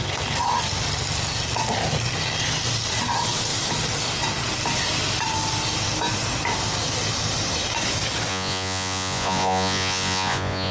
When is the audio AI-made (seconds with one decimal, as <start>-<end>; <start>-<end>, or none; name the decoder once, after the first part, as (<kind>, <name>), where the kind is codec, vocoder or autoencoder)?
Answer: 8.3-10.7 (vocoder, Vocos)